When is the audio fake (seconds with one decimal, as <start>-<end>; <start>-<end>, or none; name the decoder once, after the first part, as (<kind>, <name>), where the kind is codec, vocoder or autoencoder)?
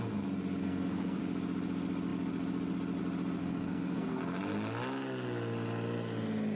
0.6-1.2 (codec, SNAC); 3.4-4.2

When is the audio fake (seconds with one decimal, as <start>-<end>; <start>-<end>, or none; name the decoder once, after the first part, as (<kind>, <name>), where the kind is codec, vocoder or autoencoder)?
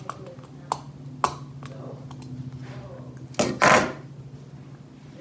none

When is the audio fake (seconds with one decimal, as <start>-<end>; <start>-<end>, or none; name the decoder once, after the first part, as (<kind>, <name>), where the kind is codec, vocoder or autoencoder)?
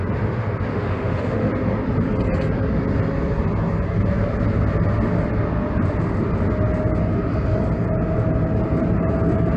0.7-1.5 (autoencoder, DAC-VAE)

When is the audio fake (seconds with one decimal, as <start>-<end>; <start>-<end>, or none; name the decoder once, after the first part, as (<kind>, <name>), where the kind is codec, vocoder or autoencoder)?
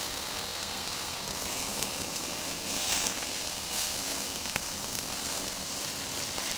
0.0-5.7 (codec, SNAC)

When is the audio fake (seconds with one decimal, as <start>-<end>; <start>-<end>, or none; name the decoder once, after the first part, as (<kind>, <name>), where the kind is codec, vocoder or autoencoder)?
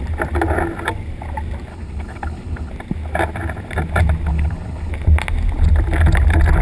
1.7-2.7 (codec, HILCodec); 4.3-4.9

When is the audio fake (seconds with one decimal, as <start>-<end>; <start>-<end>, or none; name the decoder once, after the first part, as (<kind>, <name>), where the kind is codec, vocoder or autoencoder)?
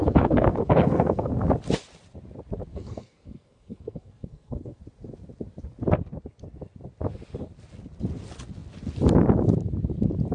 0.0-1.3 (codec, SNAC); 2.7-4.8